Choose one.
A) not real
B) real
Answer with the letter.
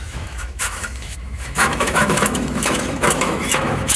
A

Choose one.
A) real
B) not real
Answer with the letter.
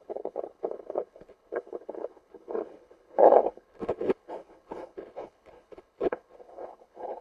B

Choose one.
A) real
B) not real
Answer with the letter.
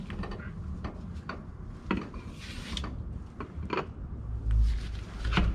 A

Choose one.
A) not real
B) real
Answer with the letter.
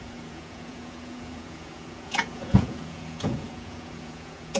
A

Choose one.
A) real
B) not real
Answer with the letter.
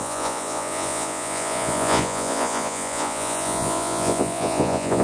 B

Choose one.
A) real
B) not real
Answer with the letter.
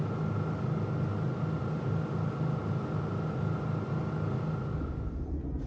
A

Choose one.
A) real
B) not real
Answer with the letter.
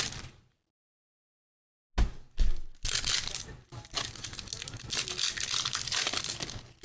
A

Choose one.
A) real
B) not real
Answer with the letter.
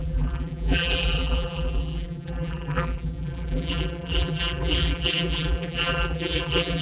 B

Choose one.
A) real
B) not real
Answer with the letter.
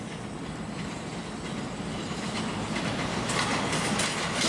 A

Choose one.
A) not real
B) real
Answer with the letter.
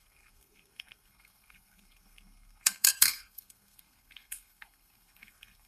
A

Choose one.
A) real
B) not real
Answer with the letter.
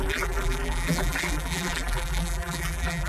B